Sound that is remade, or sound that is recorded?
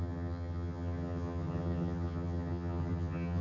remade